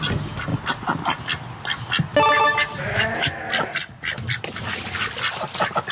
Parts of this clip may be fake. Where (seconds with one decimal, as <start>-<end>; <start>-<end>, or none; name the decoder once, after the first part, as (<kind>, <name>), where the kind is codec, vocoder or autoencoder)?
2.4-3.4 (autoencoder, DAC-VAE)